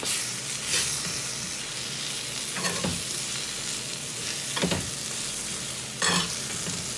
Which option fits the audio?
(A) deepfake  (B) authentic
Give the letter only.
B